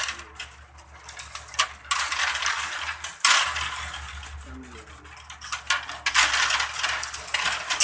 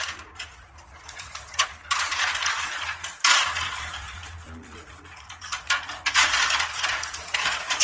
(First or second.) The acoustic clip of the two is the first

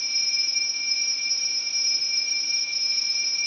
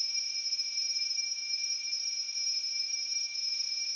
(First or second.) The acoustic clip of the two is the first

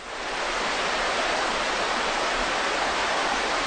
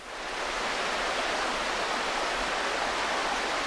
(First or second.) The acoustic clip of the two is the second